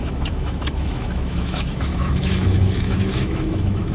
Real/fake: fake